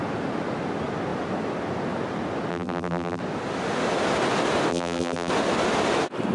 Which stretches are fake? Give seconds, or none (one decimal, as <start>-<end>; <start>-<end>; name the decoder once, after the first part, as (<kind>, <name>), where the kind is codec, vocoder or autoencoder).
2.5-3.2 (vocoder, BigVGAN v2); 4.7-5.3